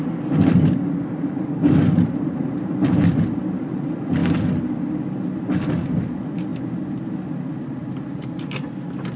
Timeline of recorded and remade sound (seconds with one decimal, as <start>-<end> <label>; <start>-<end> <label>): 0.0-9.2 recorded